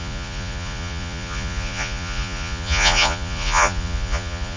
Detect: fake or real fake